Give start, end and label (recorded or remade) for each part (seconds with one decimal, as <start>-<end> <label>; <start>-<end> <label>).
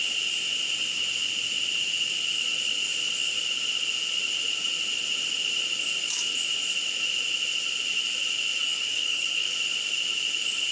0.0-8.6 recorded; 8.6-9.5 remade; 9.5-10.7 recorded